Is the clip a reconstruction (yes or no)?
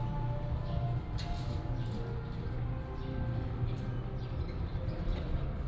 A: no